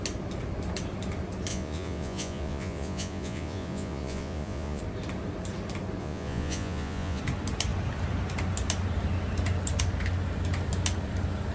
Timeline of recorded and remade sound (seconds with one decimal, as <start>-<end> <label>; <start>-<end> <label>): 0.0-1.5 recorded; 1.5-4.8 remade; 4.8-6.0 recorded; 6.0-7.2 remade; 7.2-11.5 recorded